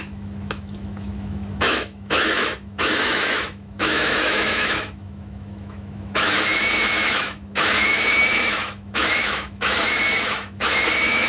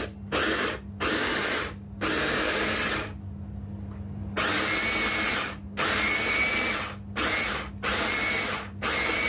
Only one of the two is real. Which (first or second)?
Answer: second